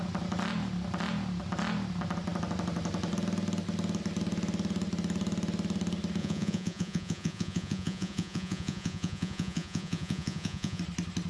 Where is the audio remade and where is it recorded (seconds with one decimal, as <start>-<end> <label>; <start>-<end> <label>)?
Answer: 0.0-6.2 recorded; 6.2-10.8 remade; 10.8-11.3 recorded